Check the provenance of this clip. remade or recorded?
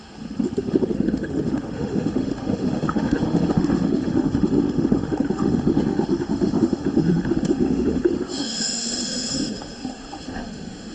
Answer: remade